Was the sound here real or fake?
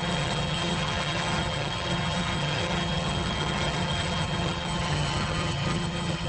fake